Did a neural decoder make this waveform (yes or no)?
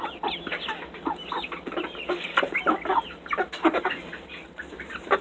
no